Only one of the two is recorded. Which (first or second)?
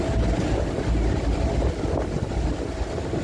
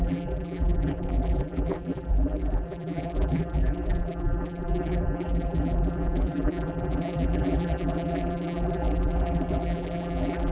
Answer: first